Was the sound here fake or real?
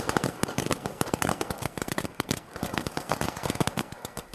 fake